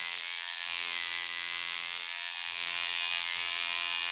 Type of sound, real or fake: fake